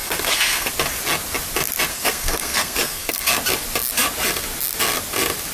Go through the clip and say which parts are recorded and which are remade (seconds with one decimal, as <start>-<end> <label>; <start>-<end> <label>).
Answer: 0.0-0.7 remade; 0.7-1.9 recorded; 1.9-3.3 remade; 3.3-5.5 recorded